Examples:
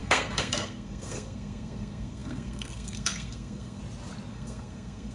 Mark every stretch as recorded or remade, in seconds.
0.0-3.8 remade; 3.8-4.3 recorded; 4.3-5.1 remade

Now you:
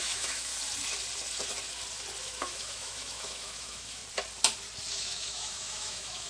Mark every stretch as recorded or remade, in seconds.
0.0-0.5 remade; 0.5-2.2 recorded; 2.2-4.0 remade; 4.0-4.9 recorded; 4.9-6.3 remade

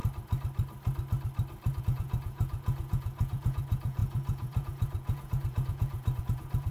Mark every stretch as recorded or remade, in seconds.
0.0-1.8 recorded; 1.8-6.7 remade

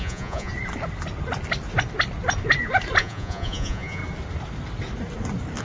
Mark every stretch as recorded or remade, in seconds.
0.0-0.5 remade; 0.5-3.0 recorded; 3.0-4.0 remade; 4.0-5.6 recorded

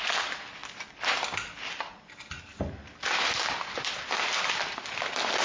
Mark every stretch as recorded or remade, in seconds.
0.0-5.4 recorded